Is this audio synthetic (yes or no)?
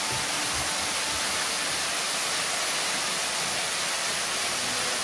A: no